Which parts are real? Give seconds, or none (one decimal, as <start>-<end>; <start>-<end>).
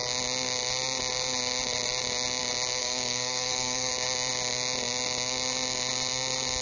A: 0.0-2.8; 3.9-6.6